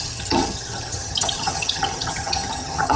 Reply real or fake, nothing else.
fake